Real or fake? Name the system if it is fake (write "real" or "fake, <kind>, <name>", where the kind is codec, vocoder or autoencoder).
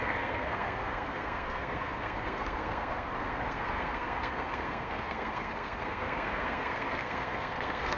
fake, codec, SNAC